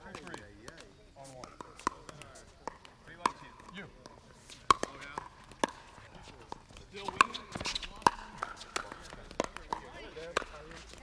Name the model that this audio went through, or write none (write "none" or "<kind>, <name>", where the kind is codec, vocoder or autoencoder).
none